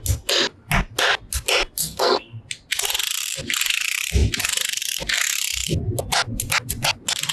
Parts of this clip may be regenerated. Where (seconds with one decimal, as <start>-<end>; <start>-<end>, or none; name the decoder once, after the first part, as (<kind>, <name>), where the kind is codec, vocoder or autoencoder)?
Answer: 1.8-2.4 (codec, SNAC)

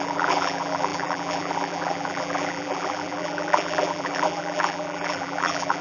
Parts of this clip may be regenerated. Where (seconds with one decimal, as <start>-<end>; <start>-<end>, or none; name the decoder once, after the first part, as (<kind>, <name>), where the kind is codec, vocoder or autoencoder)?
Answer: 0.0-5.8 (vocoder, BigVGAN v2)

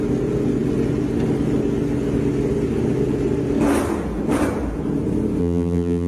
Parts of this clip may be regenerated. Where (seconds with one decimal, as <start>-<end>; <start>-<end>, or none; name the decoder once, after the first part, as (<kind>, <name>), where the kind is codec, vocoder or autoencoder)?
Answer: 5.4-6.1 (vocoder, BigVGAN v2)